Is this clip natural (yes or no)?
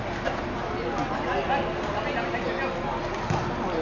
yes